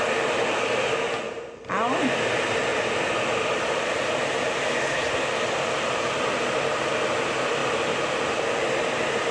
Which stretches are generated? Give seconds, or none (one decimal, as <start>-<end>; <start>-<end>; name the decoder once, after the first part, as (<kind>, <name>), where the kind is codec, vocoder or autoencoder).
7.6-8.1 (vocoder, BigVGAN v2)